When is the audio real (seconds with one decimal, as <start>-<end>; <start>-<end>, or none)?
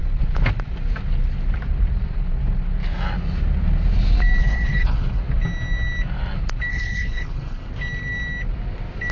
0.0-4.4; 5.2-6.7; 7.7-9.1